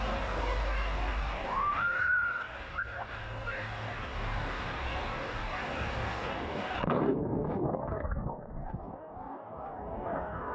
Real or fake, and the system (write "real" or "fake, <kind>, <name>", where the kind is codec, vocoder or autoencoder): fake, codec, DAC